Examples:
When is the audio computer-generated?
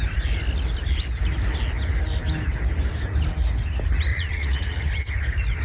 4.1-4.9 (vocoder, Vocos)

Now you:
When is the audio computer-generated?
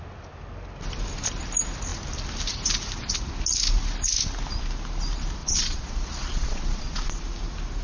5.4-7.2 (vocoder, Vocos)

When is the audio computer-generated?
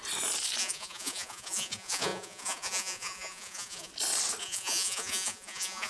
0.6-3.9 (vocoder, Vocos); 4.4-5.9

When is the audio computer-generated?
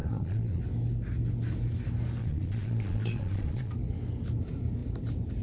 0.0-0.6 (vocoder, Vocos); 2.2-3.7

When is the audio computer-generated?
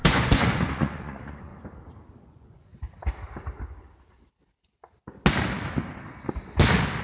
0.0-1.5 (vocoder, Vocos); 2.2-2.7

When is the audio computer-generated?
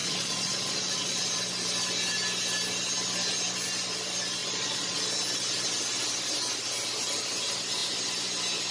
0.0-1.4 (vocoder, Vocos); 4.4-5.0